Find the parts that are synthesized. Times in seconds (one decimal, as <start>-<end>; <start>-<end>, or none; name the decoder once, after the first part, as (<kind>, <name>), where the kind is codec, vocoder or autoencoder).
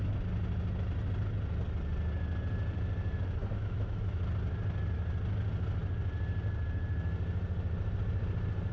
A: 3.4-4.2 (autoencoder, DAC-VAE)